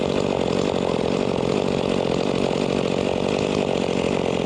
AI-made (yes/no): yes